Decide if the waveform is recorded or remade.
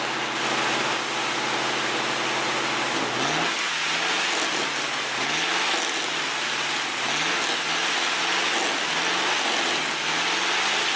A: recorded